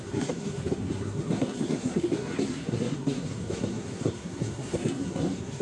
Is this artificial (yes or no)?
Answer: yes